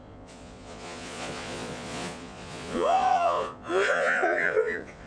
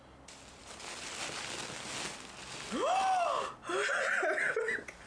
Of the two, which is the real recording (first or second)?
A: second